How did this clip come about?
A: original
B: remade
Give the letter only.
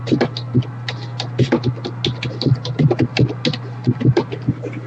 A